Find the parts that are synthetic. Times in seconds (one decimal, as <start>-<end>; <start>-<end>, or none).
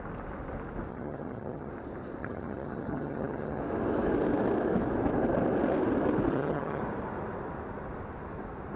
0.9-1.7; 2.2-3.6; 6.3-6.8